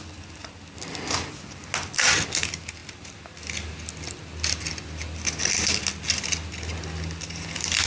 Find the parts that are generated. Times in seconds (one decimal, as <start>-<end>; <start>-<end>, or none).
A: none